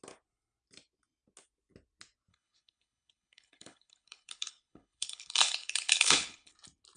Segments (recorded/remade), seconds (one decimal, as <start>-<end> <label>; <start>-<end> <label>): 0.0-2.3 recorded; 2.3-6.5 remade; 6.5-7.0 recorded